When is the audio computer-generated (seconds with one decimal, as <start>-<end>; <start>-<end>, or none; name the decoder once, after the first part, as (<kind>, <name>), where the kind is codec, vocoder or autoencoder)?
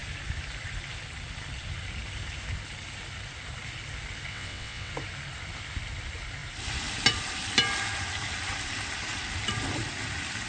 4.3-4.9 (vocoder, WaveNeXt)